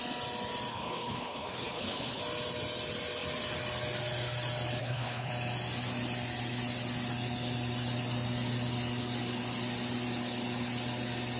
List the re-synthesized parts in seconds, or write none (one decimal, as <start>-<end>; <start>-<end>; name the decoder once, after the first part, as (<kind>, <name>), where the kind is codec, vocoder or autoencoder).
0.7-2.2 (codec, HILCodec); 4.8-5.3